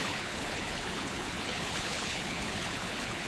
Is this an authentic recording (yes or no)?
no